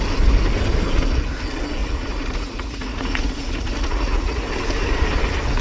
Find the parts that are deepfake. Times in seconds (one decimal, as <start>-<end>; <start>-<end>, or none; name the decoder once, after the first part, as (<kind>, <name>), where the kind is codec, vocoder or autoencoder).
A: 1.8-4.5 (vocoder, Vocos)